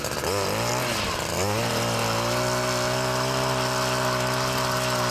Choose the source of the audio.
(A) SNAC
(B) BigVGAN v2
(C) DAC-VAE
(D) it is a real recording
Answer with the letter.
D